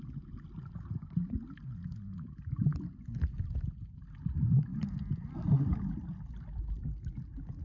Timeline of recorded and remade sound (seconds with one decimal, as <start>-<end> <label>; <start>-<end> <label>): 0.0-7.6 recorded